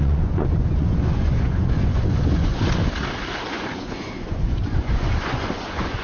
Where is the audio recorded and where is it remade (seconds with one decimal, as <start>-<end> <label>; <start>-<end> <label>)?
0.0-2.8 remade; 2.8-3.5 recorded; 3.5-6.0 remade